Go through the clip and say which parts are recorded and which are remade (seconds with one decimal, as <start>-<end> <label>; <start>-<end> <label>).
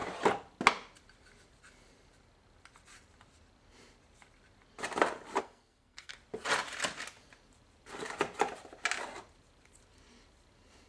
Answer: 0.0-5.4 recorded; 5.4-6.1 remade; 6.1-10.9 recorded